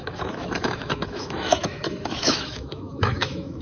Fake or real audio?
fake